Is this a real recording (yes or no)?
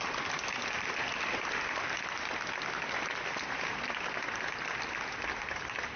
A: yes